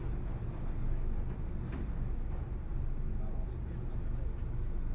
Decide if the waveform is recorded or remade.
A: recorded